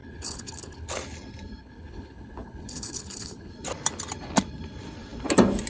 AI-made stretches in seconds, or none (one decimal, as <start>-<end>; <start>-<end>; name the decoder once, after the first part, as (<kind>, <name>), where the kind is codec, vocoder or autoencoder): 0.0-0.9 (codec, HILCodec); 1.6-3.5